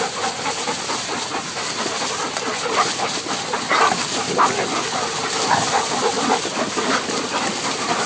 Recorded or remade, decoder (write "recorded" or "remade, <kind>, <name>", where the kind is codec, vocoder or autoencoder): recorded